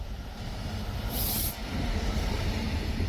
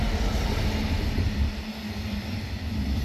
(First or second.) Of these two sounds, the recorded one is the second